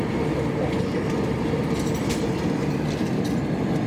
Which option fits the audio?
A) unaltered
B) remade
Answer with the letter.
A